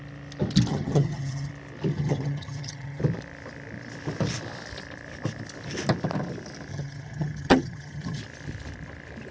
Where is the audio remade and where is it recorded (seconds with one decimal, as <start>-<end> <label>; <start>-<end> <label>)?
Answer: 0.0-0.7 recorded; 0.7-1.5 remade; 1.5-1.9 recorded; 1.9-3.0 remade; 3.0-6.7 recorded; 6.7-8.2 remade; 8.2-9.3 recorded

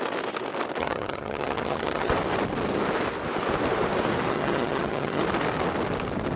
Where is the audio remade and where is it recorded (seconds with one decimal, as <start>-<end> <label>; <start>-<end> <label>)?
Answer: 0.0-0.8 recorded; 0.8-2.1 remade; 2.1-4.3 recorded; 4.3-5.2 remade; 5.2-6.4 recorded

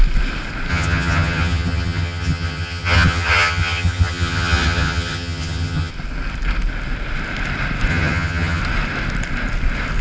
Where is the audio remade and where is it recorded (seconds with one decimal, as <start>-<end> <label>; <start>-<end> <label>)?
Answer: 0.0-0.7 recorded; 0.7-5.9 remade; 5.9-7.9 recorded; 7.9-8.6 remade; 8.6-10.0 recorded

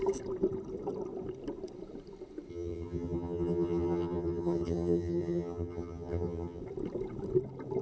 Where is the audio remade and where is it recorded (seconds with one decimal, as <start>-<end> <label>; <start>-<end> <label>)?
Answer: 0.0-2.5 recorded; 2.5-6.6 remade; 6.6-7.8 recorded

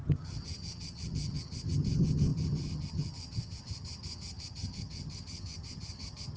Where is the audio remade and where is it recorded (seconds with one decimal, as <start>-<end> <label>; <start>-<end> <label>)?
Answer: 0.0-6.4 remade